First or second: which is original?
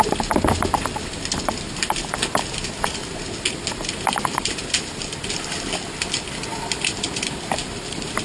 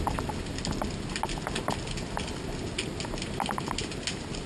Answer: second